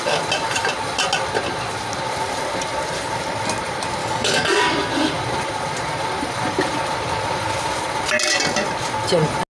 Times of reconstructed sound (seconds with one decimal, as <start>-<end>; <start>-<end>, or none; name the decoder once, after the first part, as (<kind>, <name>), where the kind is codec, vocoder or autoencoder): 4.0-4.6 (codec, DAC)